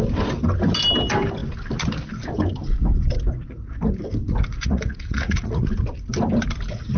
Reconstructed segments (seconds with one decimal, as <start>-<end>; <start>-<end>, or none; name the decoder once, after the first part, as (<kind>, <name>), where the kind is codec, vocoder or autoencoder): 4.5-5.6 (vocoder, Vocos)